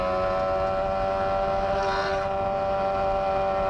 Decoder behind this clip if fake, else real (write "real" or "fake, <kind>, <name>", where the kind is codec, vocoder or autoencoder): real